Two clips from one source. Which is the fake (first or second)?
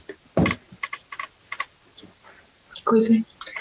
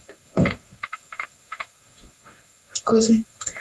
second